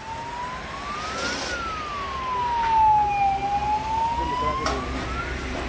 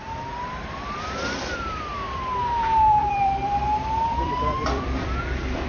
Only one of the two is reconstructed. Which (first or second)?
second